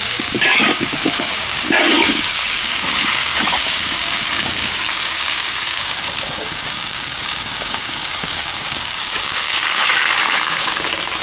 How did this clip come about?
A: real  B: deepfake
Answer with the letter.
B